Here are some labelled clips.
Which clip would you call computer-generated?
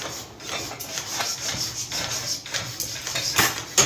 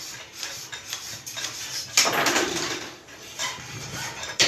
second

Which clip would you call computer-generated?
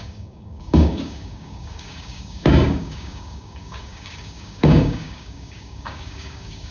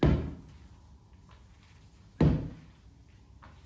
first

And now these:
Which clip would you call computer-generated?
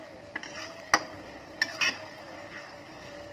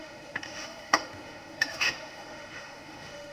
second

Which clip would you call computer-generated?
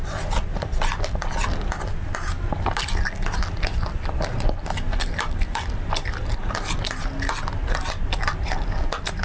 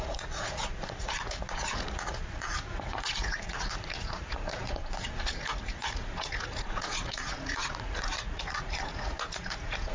second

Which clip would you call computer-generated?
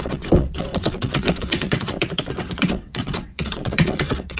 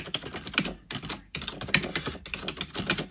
first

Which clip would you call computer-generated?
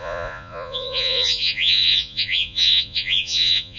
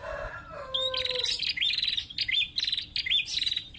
first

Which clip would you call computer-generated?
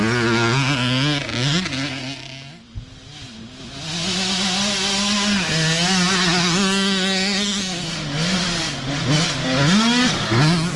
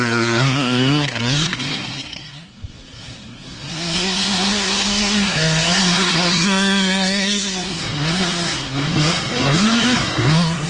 second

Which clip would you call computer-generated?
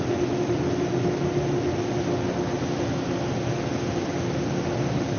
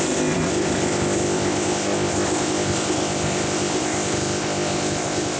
second